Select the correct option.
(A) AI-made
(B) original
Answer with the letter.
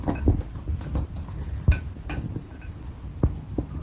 B